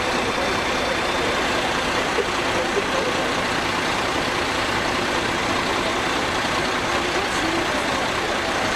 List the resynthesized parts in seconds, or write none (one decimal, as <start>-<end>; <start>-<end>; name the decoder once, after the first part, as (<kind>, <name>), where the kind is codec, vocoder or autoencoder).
0.0-5.4 (vocoder, BigVGAN v2); 6.2-8.8